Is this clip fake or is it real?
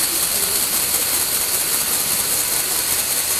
real